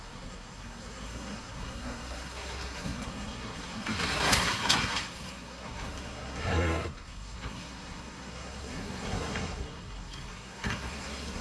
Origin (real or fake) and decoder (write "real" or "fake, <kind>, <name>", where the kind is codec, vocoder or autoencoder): fake, codec, SNAC